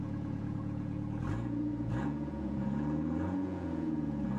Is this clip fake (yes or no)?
yes